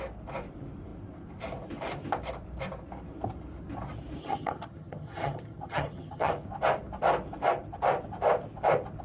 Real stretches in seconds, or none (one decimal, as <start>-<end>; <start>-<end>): 0.0-4.2; 6.3-9.0